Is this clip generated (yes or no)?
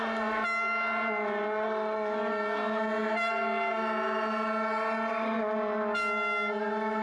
no